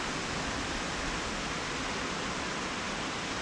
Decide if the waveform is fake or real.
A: real